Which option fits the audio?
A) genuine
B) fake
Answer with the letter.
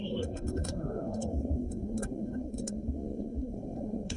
B